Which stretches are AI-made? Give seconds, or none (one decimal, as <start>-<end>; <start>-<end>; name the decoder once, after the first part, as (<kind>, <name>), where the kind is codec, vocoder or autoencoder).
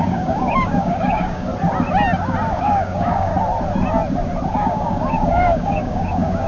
0.0-1.5 (codec, DAC); 2.5-3.3; 4.5-6.5